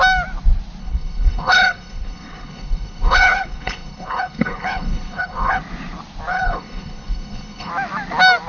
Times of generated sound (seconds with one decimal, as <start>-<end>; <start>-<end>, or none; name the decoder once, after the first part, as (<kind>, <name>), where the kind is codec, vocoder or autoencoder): 0.8-5.6 (codec, HILCodec); 6.3-7.7